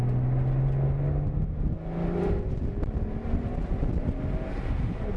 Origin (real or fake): real